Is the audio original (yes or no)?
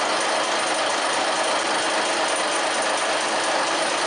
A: yes